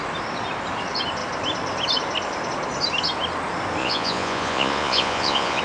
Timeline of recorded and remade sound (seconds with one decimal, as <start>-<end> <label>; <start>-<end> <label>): 0.0-3.8 recorded; 3.8-5.6 remade